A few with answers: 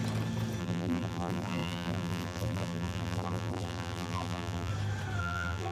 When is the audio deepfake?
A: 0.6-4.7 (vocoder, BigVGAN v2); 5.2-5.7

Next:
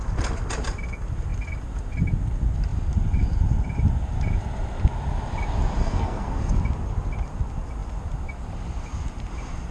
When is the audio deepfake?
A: 5.8-6.5 (codec, SNAC)

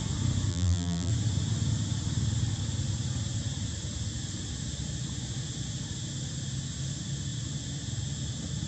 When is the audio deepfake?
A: 0.5-1.1 (vocoder, BigVGAN v2)

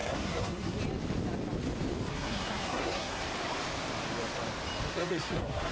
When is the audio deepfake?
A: 0.0-0.8 (codec, SNAC); 2.1-3.2; 4.9-5.7

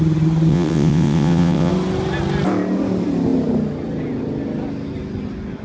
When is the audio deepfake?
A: 0.5-1.7 (vocoder, WaveNeXt)